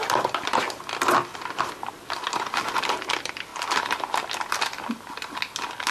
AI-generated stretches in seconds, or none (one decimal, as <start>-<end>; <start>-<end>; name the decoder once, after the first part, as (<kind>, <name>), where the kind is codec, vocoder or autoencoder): none